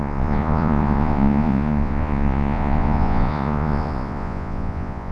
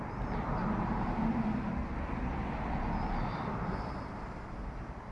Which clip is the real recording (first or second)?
second